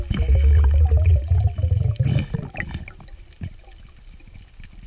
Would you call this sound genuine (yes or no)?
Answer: yes